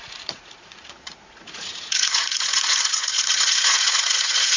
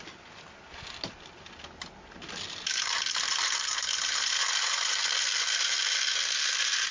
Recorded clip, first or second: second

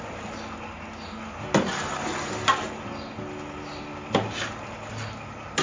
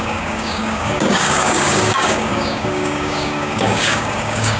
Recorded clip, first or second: first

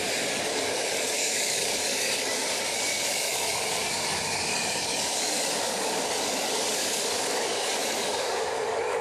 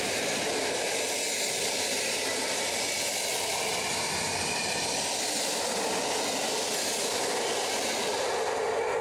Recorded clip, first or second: second